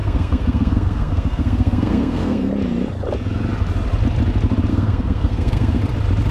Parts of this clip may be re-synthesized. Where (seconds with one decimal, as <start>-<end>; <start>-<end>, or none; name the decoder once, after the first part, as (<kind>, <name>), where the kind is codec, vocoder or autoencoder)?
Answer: 0.0-2.5 (codec, SNAC); 4.7-5.8